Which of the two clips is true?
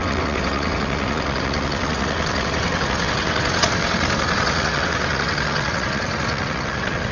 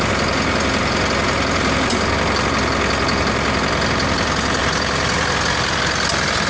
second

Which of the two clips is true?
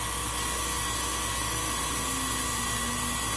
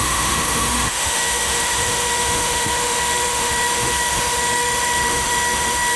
first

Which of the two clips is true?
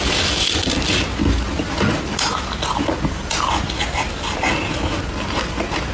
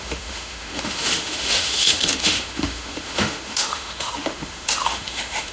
first